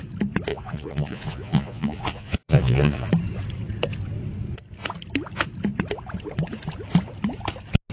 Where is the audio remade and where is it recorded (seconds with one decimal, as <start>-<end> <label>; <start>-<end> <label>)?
0.0-0.5 recorded; 0.5-3.1 remade; 3.1-7.9 recorded